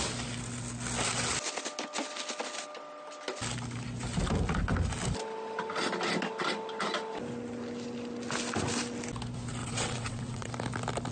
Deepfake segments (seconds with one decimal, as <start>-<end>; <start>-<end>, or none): 9.6-10.5

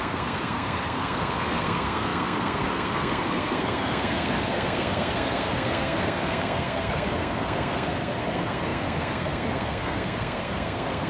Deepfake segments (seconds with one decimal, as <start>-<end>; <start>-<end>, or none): 0.0-11.1